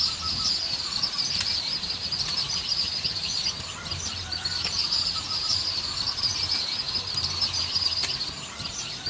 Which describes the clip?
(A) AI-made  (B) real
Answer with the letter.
A